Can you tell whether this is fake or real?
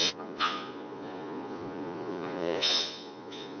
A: fake